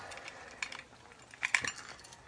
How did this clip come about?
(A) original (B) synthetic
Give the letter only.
A